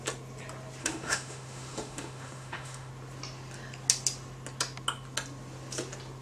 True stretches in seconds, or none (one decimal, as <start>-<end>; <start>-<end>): 0.0-0.8; 2.9-6.2